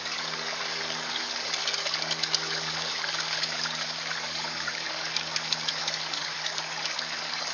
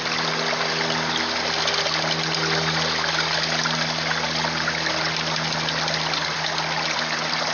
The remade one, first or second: first